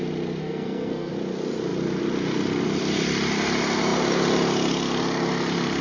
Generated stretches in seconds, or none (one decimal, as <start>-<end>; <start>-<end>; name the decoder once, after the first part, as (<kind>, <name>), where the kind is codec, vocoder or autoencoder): 0.4-1.1 (codec, SNAC)